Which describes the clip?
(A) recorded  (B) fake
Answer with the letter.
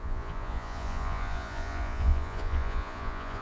B